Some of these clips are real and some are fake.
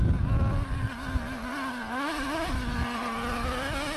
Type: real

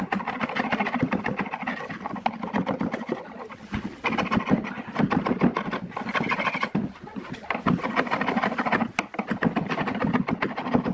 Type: real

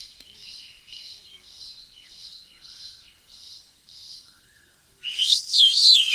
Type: fake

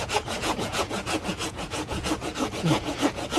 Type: fake